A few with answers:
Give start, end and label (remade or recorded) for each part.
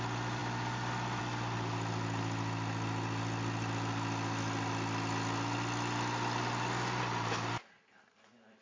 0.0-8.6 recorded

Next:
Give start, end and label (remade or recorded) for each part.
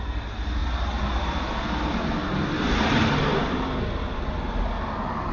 0.0-5.3 recorded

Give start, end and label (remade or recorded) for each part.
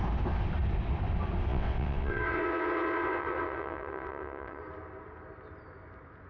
0.0-1.5 recorded; 1.5-4.6 remade; 4.6-6.3 recorded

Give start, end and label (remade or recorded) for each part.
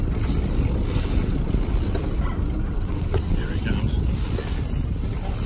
0.0-2.7 recorded; 2.7-3.6 remade; 3.6-5.5 recorded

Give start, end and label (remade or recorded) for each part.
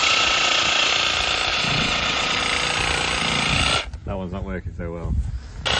0.0-0.9 remade; 0.9-1.5 recorded; 1.5-2.4 remade; 2.4-5.8 recorded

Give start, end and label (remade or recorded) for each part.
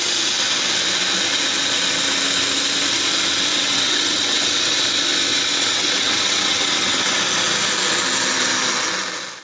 0.0-3.5 recorded; 3.5-4.8 remade; 4.8-5.3 recorded; 5.3-7.2 remade; 7.2-9.4 recorded